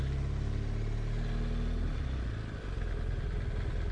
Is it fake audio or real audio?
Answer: real